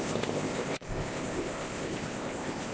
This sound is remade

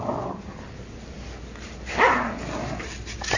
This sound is recorded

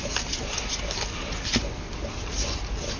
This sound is recorded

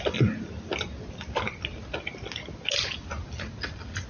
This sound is recorded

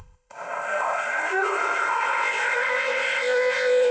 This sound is remade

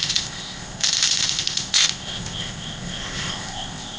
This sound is remade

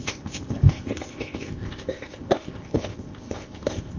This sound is remade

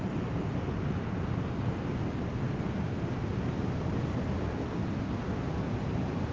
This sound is recorded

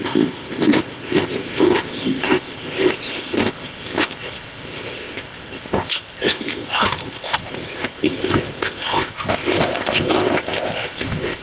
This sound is remade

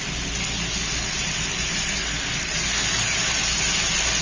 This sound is recorded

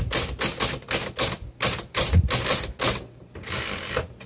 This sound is recorded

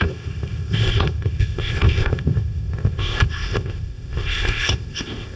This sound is remade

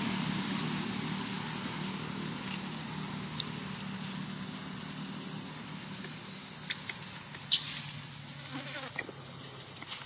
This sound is recorded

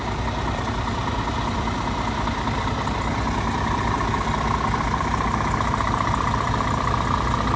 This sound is recorded